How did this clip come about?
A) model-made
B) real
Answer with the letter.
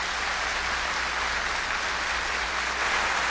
B